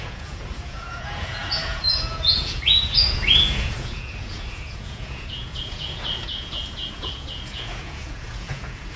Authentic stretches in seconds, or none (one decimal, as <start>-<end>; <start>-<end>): none